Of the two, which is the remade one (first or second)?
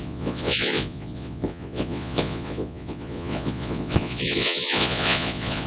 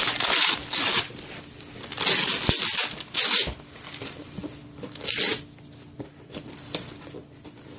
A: first